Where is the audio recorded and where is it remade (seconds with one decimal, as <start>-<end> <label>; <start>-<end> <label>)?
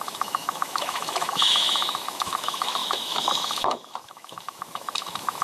0.0-5.4 remade